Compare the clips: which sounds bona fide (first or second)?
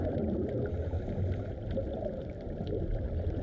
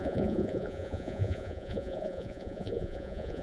first